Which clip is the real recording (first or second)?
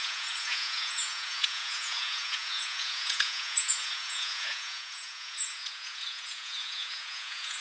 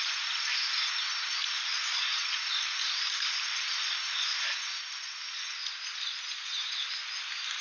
second